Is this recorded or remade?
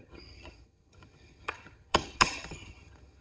remade